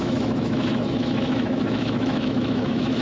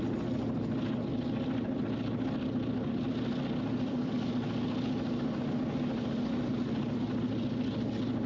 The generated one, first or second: first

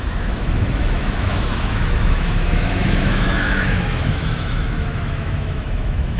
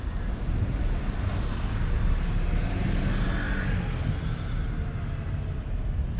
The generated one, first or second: first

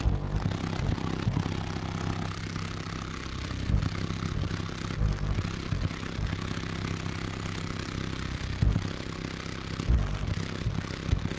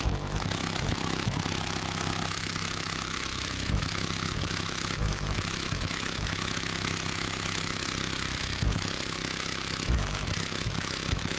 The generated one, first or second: second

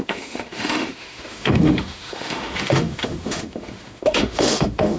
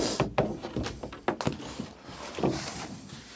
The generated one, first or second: first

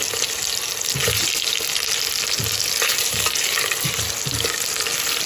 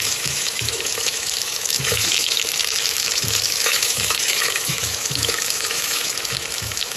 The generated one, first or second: second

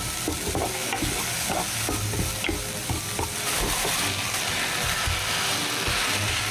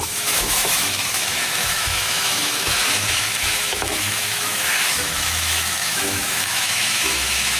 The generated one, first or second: second